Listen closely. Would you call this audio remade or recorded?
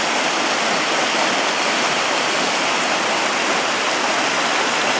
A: recorded